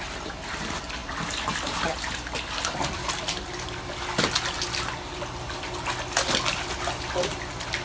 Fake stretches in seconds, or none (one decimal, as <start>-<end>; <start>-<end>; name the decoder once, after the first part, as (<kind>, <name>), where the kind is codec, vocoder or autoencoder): none